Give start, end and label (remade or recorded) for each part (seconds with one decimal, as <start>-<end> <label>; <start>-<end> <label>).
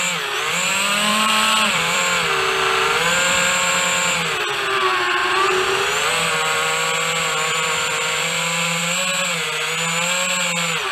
0.0-1.1 recorded; 1.1-2.0 remade; 2.0-5.2 recorded; 5.2-6.1 remade; 6.1-7.3 recorded; 7.3-8.8 remade; 8.8-10.9 recorded